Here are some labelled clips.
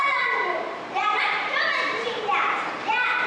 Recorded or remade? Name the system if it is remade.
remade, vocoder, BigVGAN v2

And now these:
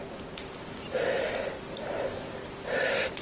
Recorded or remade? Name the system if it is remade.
recorded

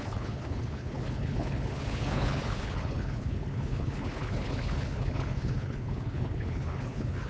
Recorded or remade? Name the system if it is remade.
remade, codec, HILCodec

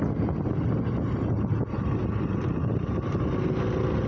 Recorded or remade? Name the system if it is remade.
recorded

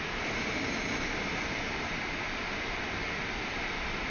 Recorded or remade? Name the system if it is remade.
recorded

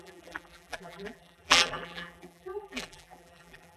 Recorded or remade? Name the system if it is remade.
remade, vocoder, BigVGAN v2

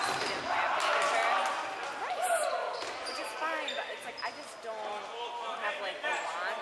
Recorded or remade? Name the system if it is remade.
recorded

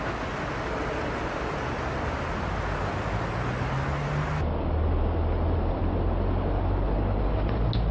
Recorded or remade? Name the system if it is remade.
recorded